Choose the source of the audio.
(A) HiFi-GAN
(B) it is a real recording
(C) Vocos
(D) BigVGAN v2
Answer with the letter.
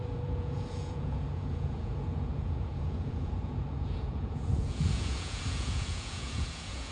C